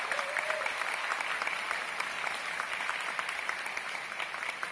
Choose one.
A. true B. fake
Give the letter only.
A